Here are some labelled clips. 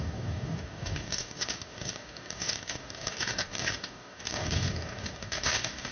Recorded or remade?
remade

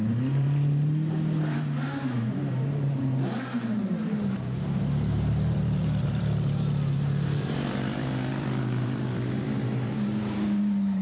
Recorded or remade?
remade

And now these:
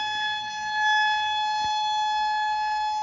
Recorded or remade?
remade